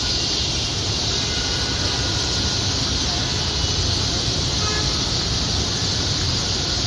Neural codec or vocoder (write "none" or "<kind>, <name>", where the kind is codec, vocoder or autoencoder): none